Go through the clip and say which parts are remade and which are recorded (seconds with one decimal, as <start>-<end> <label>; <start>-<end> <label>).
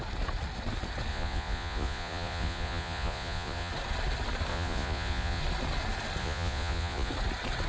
0.0-1.1 recorded; 1.1-3.7 remade; 3.7-4.5 recorded; 4.5-5.4 remade; 5.4-6.2 recorded; 6.2-7.1 remade; 7.1-7.7 recorded